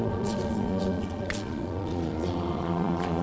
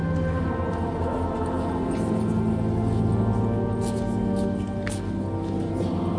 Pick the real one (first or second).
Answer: second